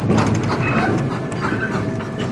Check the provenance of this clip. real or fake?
real